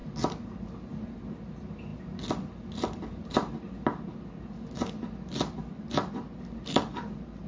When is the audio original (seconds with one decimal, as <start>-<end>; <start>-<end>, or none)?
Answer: 0.0-7.5